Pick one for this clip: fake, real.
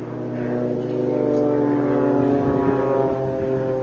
real